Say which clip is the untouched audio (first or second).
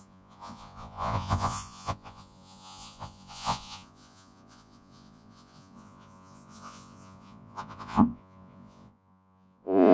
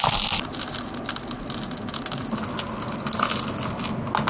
second